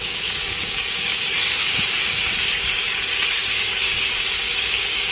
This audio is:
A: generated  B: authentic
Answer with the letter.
A